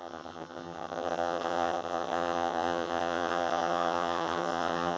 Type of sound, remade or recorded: remade